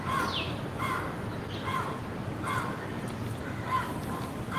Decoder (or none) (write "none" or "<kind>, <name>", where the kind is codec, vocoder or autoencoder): none